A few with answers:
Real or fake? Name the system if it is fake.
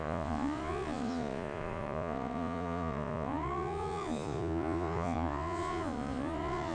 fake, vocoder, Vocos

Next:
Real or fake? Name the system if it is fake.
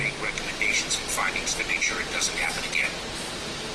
real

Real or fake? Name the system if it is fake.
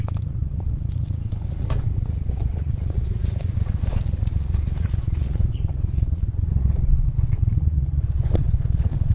fake, vocoder, Vocos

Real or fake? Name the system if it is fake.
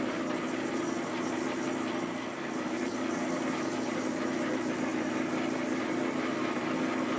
real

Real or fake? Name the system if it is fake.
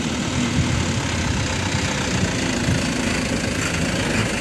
real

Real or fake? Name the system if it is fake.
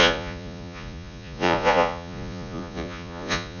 fake, vocoder, Vocos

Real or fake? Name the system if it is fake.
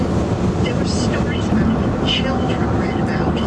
real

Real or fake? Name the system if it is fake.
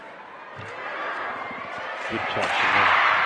real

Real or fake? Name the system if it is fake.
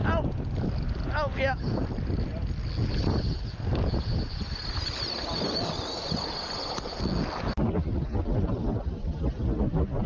real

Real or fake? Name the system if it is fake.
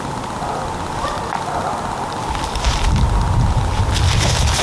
real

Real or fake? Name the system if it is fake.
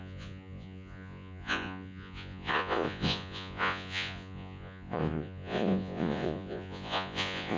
fake, vocoder, Vocos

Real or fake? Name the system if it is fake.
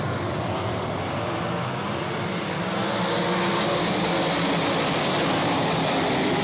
real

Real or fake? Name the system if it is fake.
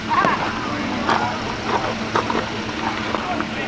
real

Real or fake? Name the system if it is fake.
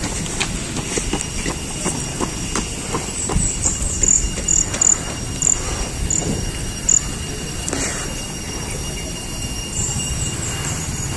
real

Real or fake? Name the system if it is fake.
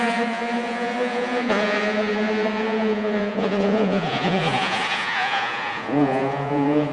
fake, vocoder, Vocos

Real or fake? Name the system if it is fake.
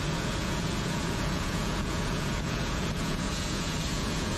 fake, vocoder, Vocos